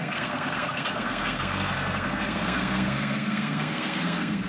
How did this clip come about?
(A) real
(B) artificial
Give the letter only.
B